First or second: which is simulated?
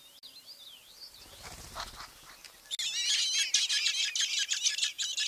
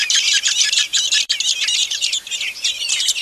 second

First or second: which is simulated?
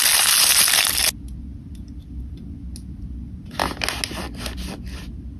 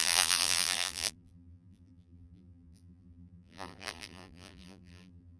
second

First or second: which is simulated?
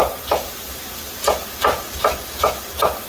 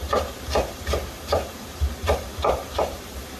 second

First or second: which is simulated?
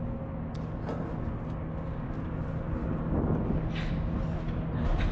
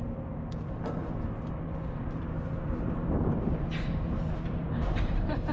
second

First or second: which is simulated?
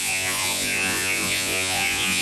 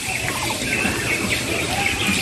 first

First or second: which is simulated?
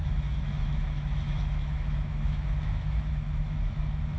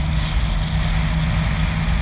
first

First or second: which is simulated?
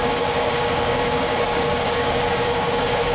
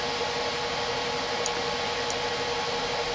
first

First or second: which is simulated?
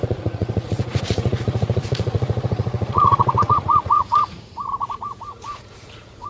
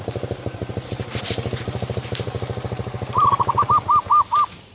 first